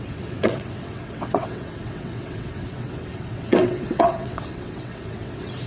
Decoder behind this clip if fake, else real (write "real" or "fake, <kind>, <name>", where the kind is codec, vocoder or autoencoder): fake, vocoder, WaveNeXt